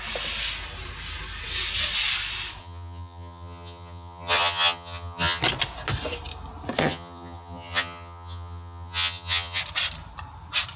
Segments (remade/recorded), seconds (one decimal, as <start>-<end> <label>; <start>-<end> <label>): 0.0-2.6 recorded; 2.6-5.4 remade; 5.4-6.8 recorded; 6.8-9.6 remade; 9.6-10.8 recorded